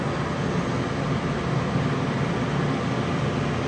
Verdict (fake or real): real